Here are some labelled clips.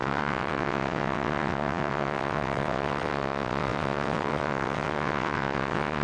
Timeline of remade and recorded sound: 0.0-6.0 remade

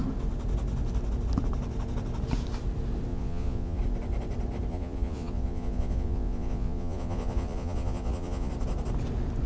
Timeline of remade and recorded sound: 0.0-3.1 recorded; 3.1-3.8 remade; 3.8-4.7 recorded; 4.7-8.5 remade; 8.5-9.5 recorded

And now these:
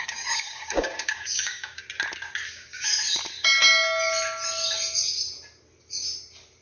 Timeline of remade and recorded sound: 0.0-1.8 remade; 1.8-2.5 recorded; 2.5-2.9 remade; 2.9-6.6 recorded

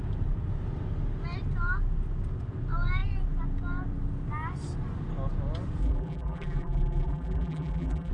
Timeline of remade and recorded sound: 0.0-5.8 recorded; 5.8-8.1 remade

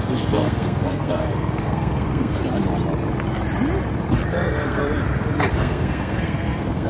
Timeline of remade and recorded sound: 0.0-2.4 remade; 2.4-4.3 recorded; 4.3-4.8 remade; 4.8-5.5 recorded; 5.5-6.9 remade